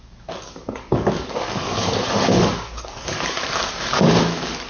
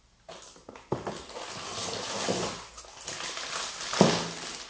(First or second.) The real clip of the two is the second